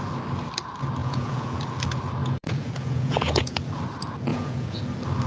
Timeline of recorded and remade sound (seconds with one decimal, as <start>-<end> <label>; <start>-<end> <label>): 0.0-1.0 recorded; 1.0-1.6 remade; 1.6-2.2 recorded; 2.2-3.6 remade; 3.6-4.3 recorded; 4.3-4.8 remade; 4.8-5.3 recorded